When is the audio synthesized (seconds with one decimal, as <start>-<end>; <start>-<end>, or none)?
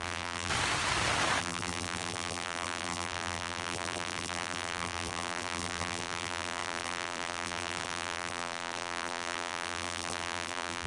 0.0-0.5; 1.4-10.9